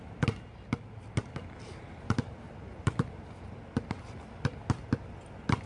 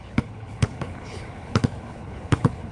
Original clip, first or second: first